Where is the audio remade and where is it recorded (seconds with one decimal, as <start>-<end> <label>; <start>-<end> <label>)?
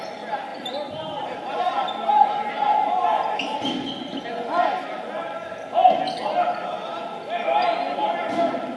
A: 0.0-8.8 recorded